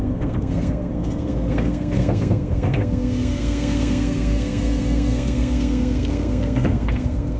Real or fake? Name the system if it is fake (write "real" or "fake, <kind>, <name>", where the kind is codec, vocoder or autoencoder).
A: fake, codec, SNAC